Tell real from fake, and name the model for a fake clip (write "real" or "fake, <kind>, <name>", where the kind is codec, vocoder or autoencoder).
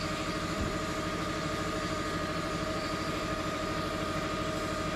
fake, vocoder, BigVGAN v2